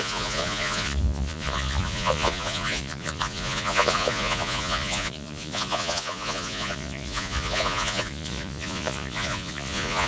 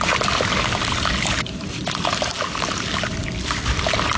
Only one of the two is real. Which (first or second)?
second